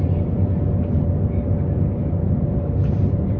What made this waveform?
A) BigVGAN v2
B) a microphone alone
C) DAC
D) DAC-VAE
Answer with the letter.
B